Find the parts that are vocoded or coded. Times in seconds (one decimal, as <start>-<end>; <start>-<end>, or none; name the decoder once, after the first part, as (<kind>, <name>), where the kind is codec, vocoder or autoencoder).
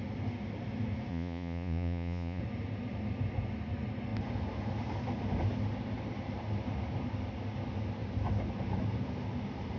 1.1-2.4 (vocoder, Vocos)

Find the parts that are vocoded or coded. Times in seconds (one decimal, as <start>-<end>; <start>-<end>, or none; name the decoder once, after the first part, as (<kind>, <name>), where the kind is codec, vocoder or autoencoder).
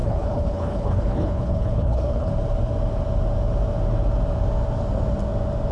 0.0-2.3 (codec, HILCodec)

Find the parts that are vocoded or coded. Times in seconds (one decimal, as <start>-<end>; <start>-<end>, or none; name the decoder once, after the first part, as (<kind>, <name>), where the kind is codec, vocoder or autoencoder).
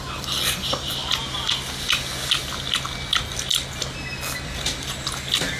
none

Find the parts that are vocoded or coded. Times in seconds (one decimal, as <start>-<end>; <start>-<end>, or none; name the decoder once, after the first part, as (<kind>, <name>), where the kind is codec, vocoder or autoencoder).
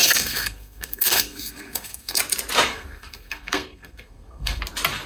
0.0-2.2 (codec, SNAC); 2.7-4.6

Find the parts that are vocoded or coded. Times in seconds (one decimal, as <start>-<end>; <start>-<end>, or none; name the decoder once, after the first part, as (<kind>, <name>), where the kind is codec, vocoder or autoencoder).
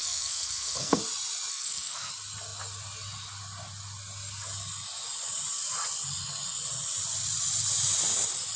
0.0-1.0 (codec, SNAC); 1.5-2.1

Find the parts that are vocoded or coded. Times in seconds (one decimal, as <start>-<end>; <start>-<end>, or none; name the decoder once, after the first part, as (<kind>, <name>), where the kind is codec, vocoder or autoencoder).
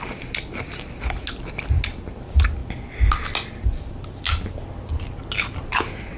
none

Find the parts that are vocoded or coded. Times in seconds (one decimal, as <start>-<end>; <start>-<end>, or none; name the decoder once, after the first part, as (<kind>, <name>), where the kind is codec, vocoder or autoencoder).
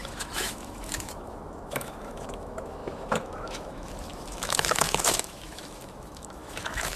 0.0-7.0 (autoencoder, DAC-VAE)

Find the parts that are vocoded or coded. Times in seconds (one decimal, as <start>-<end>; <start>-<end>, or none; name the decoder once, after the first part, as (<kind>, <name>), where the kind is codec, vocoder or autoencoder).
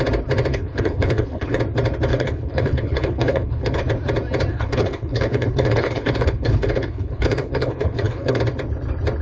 0.5-1.6 (codec, HILCodec); 2.1-3.8; 4.5-8.4